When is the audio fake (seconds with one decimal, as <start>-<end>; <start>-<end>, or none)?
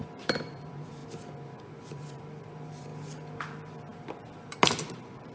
0.0-1.0; 1.9-2.9; 3.4-5.3